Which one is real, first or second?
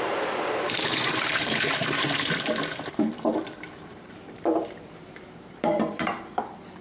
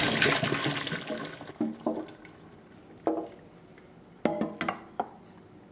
second